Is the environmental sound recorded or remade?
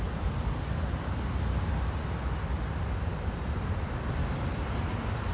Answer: recorded